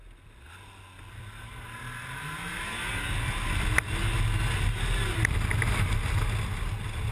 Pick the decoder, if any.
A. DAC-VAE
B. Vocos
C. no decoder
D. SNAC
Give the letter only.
C